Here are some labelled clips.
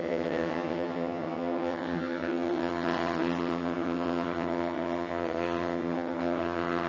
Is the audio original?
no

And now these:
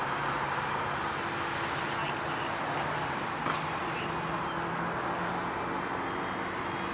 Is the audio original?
yes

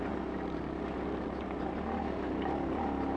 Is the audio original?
yes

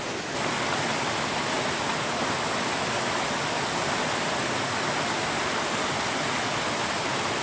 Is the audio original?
yes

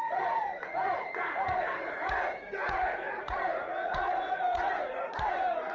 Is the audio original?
no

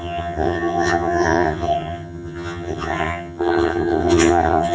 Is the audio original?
no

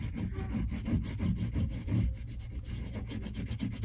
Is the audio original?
yes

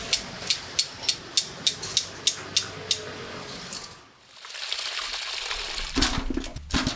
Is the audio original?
yes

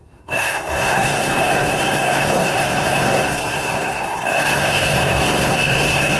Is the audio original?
no